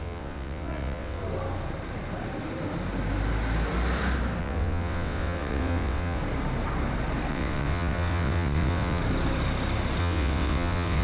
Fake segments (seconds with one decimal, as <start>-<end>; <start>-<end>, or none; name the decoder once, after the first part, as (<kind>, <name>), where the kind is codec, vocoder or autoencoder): 0.0-1.2 (vocoder, WaveNeXt); 4.4-6.2; 7.3-9.0; 10.0-11.0

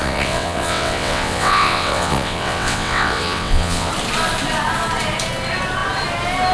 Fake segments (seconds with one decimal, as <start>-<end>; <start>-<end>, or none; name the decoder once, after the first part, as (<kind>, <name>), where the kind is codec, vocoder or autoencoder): 0.0-3.9 (vocoder, WaveNeXt)